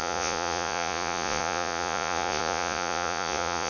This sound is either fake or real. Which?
fake